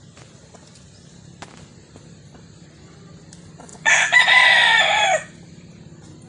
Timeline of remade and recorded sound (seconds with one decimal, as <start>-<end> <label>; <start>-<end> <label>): 0.0-3.7 recorded; 3.7-5.0 remade; 5.0-6.3 recorded